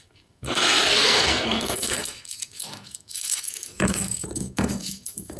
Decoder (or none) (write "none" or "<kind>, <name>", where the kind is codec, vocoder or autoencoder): codec, SNAC